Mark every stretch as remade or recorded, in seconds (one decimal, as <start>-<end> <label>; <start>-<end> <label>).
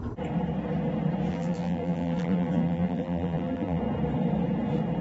0.0-1.3 recorded; 1.3-3.8 remade; 3.8-5.0 recorded